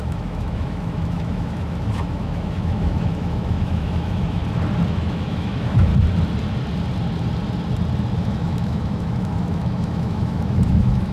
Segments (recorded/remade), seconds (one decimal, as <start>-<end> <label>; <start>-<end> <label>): 0.0-4.4 remade; 4.4-4.9 recorded; 4.9-5.9 remade; 5.9-8.2 recorded; 8.2-11.1 remade